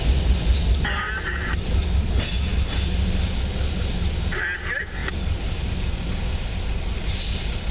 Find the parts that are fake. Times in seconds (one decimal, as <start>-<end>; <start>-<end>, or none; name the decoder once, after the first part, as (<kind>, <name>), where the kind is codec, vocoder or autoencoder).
none